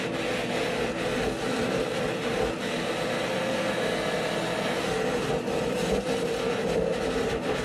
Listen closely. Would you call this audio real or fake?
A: real